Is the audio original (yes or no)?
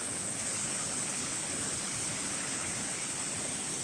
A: no